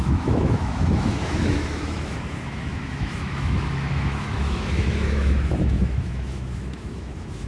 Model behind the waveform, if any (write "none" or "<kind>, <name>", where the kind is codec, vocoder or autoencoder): autoencoder, DAC-VAE